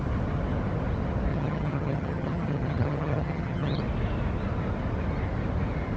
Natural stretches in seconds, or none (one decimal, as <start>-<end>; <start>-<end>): 0.0-1.3; 3.8-6.0